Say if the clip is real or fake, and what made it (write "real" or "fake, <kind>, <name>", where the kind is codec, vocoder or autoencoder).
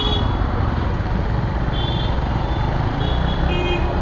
real